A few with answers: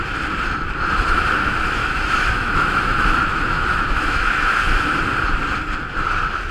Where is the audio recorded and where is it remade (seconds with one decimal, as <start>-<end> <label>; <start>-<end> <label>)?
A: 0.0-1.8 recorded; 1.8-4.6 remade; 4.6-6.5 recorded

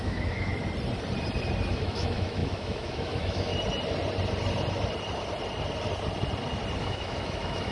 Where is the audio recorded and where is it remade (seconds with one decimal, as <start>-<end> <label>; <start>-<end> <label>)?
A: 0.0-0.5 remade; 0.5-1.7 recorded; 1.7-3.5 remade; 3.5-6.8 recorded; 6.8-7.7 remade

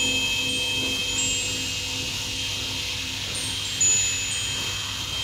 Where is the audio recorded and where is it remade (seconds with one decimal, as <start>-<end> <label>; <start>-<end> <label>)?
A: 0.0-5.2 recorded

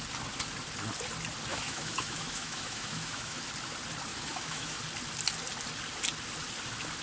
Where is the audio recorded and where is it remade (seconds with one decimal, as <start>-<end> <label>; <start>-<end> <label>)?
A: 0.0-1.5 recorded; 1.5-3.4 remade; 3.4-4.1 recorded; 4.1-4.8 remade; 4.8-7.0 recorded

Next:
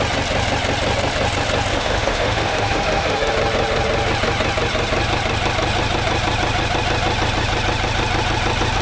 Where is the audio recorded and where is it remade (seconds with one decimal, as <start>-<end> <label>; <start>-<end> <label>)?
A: 0.0-1.7 recorded; 1.7-3.3 remade; 3.3-8.8 recorded

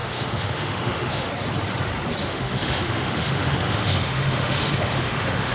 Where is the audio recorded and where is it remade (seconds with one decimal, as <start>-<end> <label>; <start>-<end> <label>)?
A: 0.0-1.3 remade; 1.3-2.2 recorded; 2.2-5.5 remade

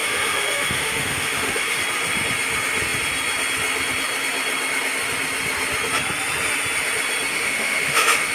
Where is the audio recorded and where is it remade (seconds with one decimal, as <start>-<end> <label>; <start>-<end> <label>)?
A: 0.0-1.8 remade; 1.8-7.3 recorded; 7.3-8.3 remade